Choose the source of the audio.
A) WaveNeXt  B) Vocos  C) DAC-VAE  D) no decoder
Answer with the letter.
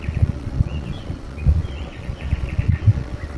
B